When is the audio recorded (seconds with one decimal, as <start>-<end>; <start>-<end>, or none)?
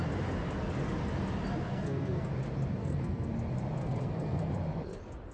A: 0.0-1.7; 2.3-2.8; 3.3-3.8; 4.5-5.3